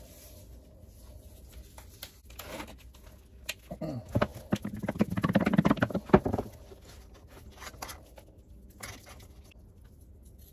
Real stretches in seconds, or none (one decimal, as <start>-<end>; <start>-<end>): 0.0-10.5